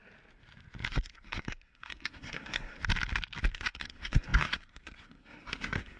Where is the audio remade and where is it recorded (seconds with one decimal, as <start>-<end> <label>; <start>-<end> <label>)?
0.0-0.9 recorded; 0.9-2.8 remade; 2.8-3.5 recorded; 3.5-6.0 remade